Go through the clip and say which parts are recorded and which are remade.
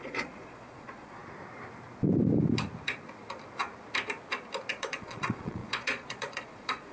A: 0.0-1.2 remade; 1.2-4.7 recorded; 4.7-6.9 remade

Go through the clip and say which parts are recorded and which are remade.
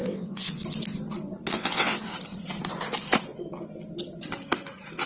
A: 0.0-0.6 remade; 0.6-1.5 recorded; 1.5-2.0 remade; 2.0-5.1 recorded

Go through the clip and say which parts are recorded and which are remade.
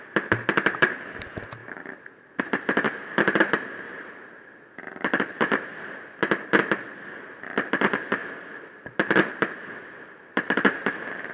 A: 0.0-1.6 recorded; 1.6-2.4 remade; 2.4-3.0 recorded; 3.0-4.2 remade; 4.2-11.3 recorded